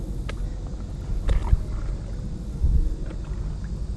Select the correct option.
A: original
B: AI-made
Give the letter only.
A